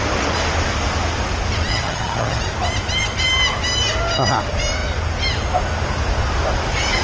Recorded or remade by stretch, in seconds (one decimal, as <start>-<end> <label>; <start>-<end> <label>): 0.0-1.7 recorded; 1.7-2.4 remade; 2.4-7.0 recorded